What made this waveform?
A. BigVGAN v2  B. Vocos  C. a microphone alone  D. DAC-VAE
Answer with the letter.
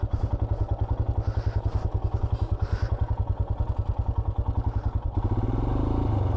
C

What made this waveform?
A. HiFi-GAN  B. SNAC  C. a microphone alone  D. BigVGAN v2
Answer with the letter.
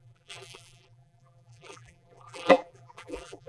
D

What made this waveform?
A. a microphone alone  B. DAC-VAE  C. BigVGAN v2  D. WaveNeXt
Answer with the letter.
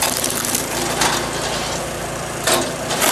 A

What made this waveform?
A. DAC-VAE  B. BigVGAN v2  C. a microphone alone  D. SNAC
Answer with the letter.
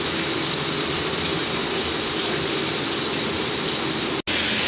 C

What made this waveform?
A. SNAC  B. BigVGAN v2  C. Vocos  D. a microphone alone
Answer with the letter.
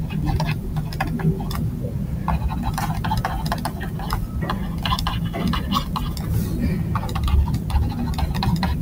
D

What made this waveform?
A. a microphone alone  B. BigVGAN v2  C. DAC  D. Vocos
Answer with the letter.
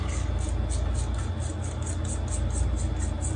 A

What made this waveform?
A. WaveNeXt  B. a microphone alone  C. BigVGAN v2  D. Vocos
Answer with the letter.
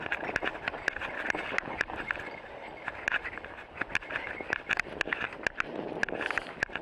B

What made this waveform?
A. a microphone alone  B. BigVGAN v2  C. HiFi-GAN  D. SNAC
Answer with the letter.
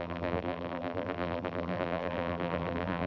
B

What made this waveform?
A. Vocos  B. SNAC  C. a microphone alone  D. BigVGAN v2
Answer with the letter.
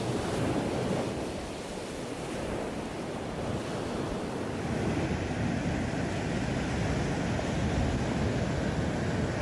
C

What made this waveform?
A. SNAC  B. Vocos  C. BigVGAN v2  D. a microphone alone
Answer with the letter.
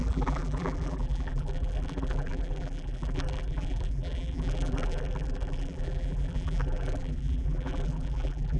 C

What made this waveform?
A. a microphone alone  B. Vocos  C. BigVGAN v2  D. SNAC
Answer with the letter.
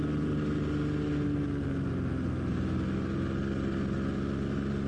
A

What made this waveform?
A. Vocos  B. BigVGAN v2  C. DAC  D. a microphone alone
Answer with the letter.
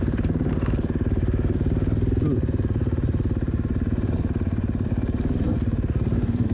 B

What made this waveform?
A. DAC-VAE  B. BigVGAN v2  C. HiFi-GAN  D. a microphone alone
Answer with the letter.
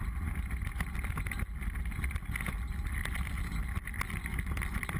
D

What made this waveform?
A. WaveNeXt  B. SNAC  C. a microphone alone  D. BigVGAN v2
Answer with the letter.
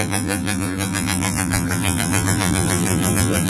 D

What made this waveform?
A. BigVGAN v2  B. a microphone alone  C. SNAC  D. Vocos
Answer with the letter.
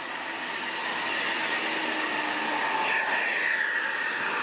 B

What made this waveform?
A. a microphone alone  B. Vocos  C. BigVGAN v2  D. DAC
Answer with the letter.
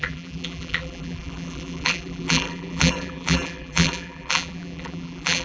C